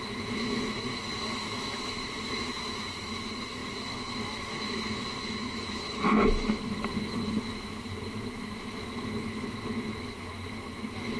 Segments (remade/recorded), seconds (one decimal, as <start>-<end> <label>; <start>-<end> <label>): 0.0-11.2 remade